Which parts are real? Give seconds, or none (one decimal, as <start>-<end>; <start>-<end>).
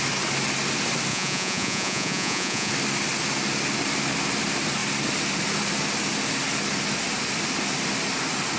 0.0-1.1; 2.7-8.6